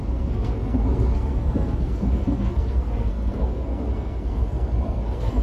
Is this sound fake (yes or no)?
yes